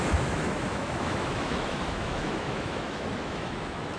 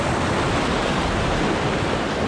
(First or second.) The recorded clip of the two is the second